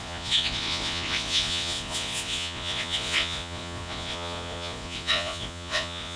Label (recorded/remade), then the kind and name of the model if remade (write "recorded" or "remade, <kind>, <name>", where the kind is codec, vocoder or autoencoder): remade, vocoder, Vocos